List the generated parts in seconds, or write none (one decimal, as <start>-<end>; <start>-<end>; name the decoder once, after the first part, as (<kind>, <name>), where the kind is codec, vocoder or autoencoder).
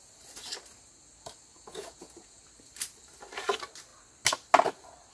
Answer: 1.5-2.4 (vocoder, Vocos)